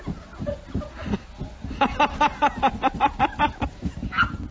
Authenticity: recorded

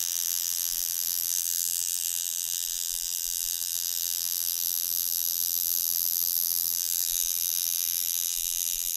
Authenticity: remade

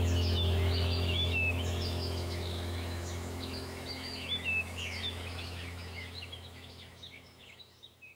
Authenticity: remade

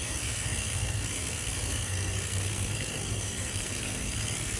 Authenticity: remade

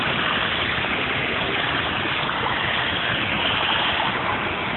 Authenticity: recorded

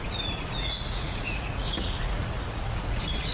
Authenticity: remade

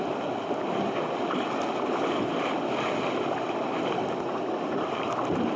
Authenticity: recorded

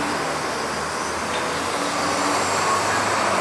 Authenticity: recorded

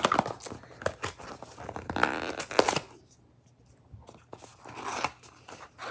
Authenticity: recorded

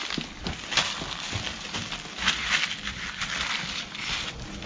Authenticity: recorded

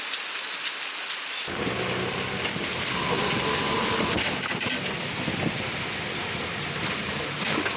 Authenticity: recorded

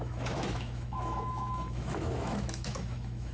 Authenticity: remade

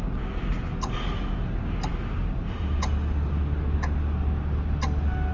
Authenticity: recorded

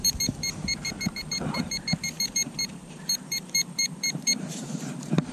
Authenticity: remade